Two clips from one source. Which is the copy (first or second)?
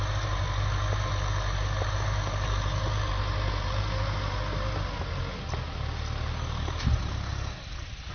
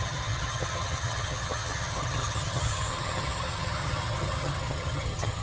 second